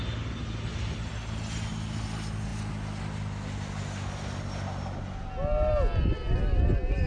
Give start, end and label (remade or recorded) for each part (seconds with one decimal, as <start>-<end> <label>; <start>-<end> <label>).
0.0-7.1 recorded

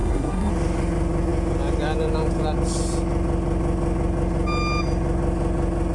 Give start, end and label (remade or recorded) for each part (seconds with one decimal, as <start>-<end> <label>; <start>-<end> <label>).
0.0-0.5 remade; 0.5-5.9 recorded